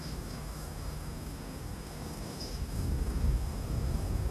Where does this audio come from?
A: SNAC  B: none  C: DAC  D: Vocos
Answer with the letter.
C